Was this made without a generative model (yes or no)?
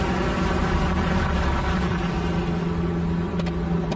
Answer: yes